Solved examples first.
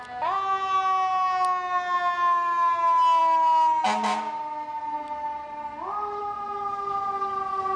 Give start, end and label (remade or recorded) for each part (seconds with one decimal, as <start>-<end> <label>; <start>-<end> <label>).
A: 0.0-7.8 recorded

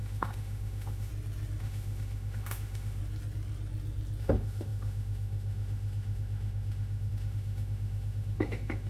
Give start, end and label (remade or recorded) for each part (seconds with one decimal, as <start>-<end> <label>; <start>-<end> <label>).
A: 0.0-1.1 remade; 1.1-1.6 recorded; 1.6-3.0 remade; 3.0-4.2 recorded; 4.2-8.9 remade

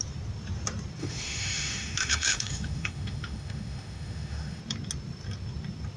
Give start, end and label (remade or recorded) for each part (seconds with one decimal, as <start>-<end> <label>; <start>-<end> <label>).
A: 0.0-1.0 recorded; 1.0-4.6 remade; 4.6-6.0 recorded

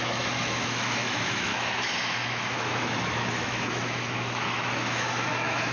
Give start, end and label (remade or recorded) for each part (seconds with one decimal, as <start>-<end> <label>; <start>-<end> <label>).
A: 0.0-5.7 remade